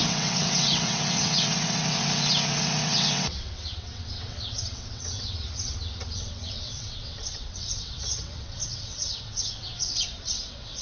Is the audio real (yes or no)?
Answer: no